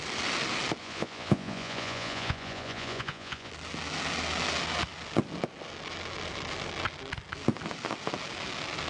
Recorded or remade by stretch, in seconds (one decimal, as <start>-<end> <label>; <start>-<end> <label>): 0.0-0.8 recorded; 0.8-3.5 remade; 3.5-8.9 recorded